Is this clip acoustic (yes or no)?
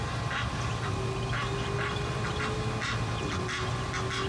yes